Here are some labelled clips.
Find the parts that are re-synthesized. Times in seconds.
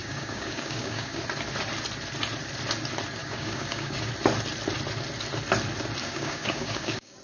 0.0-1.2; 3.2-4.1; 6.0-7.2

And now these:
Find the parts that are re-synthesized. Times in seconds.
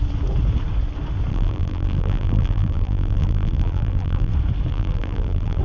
1.3-4.3; 4.7-5.6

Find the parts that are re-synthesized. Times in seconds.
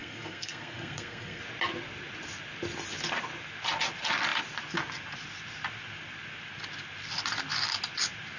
0.0-1.4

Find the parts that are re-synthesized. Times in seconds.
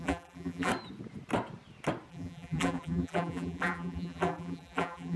0.0-0.7; 2.1-5.2